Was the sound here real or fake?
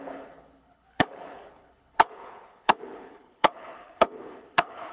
fake